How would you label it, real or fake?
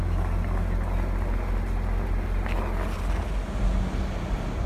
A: real